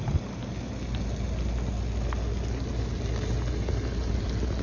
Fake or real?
real